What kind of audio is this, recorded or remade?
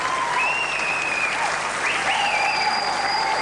recorded